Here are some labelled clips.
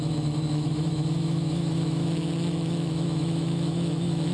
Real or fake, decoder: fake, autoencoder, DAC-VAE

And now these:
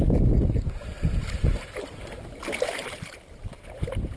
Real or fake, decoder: real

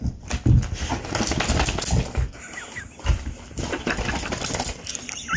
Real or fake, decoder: real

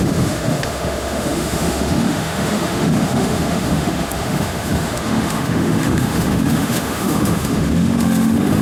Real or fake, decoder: fake, autoencoder, DAC-VAE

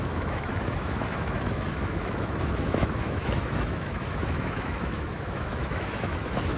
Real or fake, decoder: fake, autoencoder, DAC-VAE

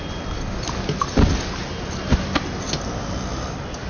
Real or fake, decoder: real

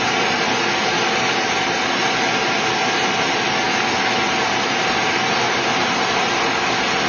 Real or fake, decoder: real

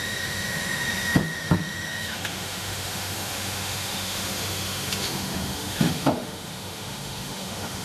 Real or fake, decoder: fake, autoencoder, DAC-VAE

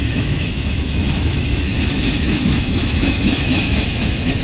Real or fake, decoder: fake, autoencoder, DAC-VAE